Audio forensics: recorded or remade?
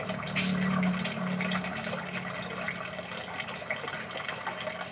recorded